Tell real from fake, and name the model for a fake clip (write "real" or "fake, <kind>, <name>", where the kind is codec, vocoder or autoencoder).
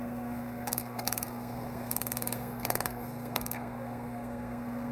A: fake, codec, SNAC